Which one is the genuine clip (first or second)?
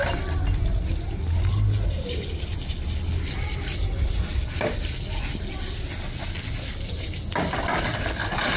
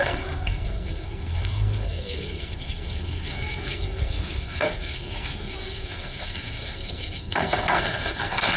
first